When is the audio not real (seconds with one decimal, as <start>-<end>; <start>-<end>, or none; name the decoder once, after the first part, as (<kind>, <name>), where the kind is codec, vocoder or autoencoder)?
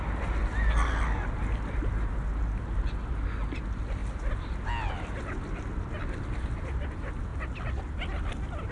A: none